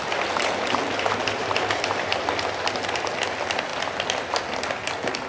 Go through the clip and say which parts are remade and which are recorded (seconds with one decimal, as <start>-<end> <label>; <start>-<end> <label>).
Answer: 0.0-1.4 recorded; 1.4-2.3 remade; 2.3-5.3 recorded